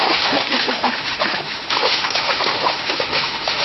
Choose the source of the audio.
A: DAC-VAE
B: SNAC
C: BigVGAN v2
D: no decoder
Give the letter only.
A